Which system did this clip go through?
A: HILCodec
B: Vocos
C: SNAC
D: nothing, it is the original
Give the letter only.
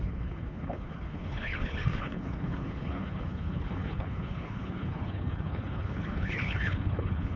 A